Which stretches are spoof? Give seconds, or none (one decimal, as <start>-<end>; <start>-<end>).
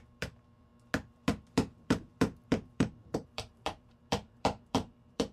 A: 0.0-0.7; 1.5-5.3